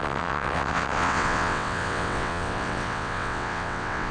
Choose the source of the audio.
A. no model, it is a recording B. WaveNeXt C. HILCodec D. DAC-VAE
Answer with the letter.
B